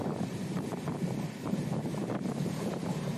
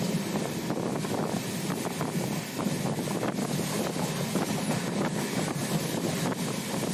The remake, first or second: first